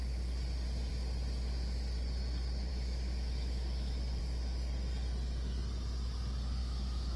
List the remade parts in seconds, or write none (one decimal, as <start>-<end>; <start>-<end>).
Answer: 2.7-4.2; 6.6-7.2